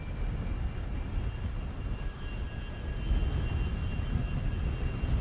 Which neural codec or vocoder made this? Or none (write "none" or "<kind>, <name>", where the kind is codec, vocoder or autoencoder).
none